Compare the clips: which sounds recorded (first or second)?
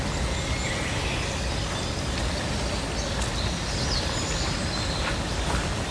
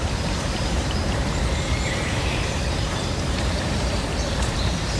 first